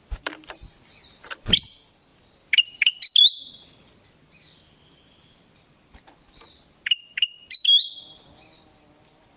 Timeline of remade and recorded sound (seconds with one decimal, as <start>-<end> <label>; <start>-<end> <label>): 0.0-2.1 remade; 2.1-3.2 recorded; 3.2-9.4 remade